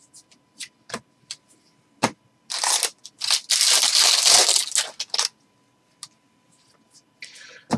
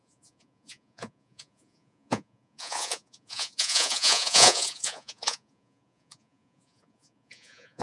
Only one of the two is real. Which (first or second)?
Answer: first